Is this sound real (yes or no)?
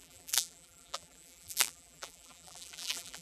no